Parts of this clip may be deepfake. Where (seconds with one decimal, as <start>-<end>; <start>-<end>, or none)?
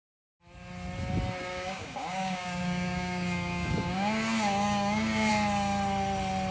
1.4-5.3